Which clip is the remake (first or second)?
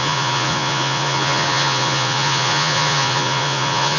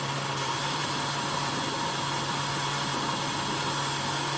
first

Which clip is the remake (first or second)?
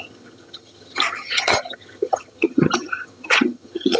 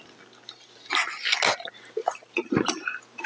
first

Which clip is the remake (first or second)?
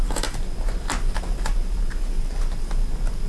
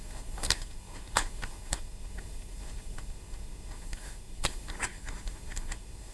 second